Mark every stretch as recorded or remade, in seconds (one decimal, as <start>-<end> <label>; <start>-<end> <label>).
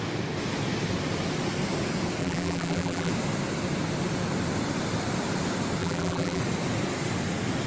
0.0-2.2 recorded; 2.2-3.1 remade; 3.1-5.8 recorded; 5.8-6.4 remade; 6.4-7.7 recorded